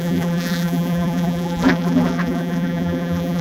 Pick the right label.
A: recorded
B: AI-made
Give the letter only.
B